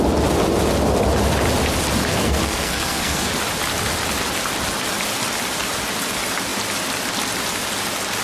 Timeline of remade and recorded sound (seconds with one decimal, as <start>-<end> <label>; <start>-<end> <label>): 0.0-2.1 recorded; 2.1-3.3 remade; 3.3-8.2 recorded